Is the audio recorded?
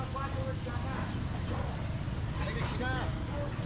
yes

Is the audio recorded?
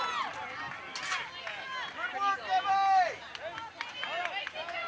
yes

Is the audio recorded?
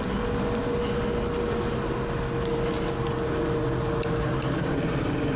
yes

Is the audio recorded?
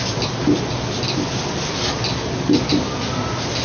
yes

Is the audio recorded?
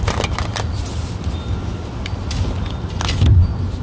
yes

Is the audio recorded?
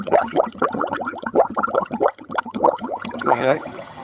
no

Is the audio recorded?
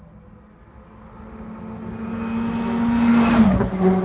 yes